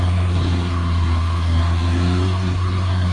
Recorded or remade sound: remade